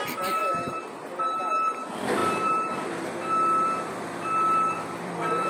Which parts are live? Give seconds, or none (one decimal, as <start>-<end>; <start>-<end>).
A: 0.0-0.4; 1.5-2.2